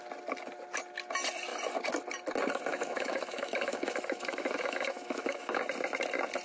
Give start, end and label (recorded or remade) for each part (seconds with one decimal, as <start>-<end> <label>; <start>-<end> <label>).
0.0-2.7 recorded; 2.7-5.6 remade; 5.6-6.4 recorded